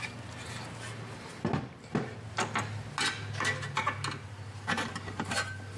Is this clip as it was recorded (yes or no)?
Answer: yes